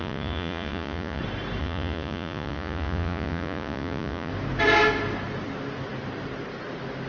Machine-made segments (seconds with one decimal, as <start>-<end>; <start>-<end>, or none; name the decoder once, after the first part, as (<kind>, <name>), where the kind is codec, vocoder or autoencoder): 0.0-1.2 (vocoder, Vocos); 1.6-4.3